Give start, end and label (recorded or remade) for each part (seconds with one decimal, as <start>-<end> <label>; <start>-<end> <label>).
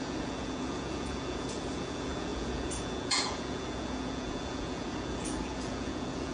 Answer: 0.0-6.3 remade